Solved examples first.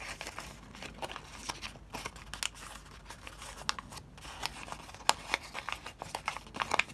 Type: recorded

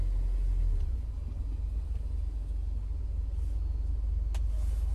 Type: recorded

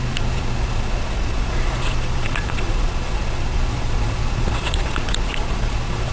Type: remade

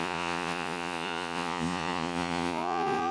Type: remade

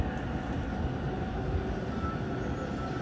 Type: recorded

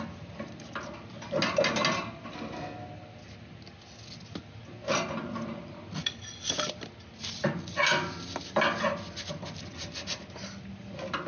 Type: recorded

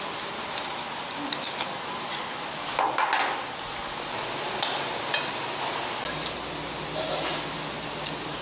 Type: recorded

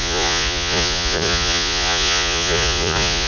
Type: remade